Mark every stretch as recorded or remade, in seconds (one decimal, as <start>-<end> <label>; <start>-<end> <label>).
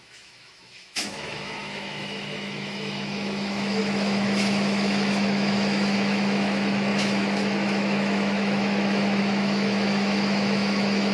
0.0-11.1 remade